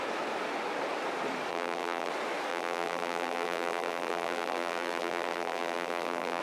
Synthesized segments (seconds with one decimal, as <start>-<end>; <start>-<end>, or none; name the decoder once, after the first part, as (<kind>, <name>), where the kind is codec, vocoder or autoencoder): 1.5-2.1 (vocoder, BigVGAN v2); 2.5-6.4